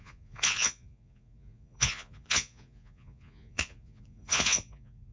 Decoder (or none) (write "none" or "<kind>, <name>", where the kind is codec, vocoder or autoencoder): vocoder, Vocos